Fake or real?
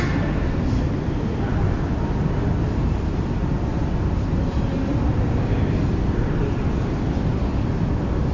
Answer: real